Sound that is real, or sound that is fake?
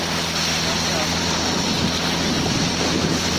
real